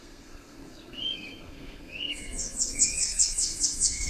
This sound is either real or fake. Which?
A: fake